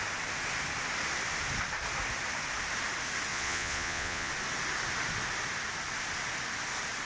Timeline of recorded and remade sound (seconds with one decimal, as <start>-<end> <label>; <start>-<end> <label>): 0.0-3.3 recorded; 3.3-4.3 remade; 4.3-7.0 recorded